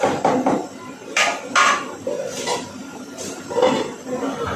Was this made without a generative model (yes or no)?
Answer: yes